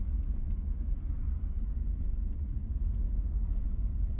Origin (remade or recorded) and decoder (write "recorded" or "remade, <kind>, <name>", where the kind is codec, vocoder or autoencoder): recorded